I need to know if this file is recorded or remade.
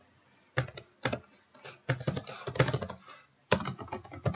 recorded